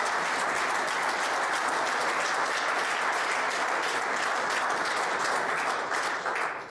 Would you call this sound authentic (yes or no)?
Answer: yes